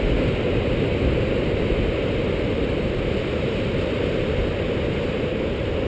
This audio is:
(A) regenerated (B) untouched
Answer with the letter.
B